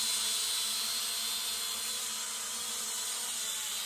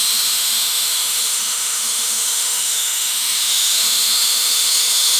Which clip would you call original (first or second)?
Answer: first